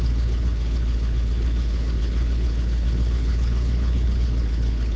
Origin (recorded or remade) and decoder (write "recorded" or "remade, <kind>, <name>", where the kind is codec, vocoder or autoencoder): remade, codec, HILCodec